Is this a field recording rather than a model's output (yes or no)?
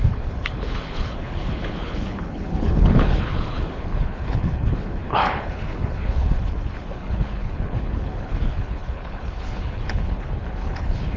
no